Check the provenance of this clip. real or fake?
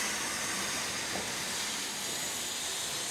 real